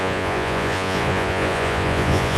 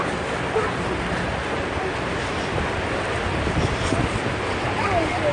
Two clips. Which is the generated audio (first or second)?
first